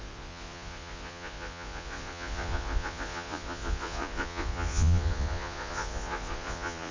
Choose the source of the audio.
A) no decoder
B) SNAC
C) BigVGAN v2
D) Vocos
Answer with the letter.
D